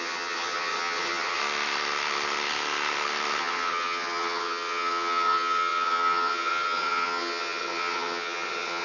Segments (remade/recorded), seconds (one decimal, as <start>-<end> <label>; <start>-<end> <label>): 0.0-1.4 remade; 1.4-3.4 recorded; 3.4-8.8 remade